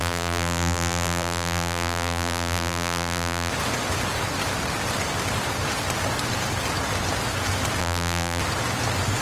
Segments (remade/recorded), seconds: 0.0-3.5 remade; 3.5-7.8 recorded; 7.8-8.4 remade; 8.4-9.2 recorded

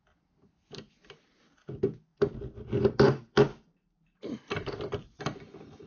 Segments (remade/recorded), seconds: 0.0-2.1 recorded; 2.1-5.2 remade; 5.2-5.9 recorded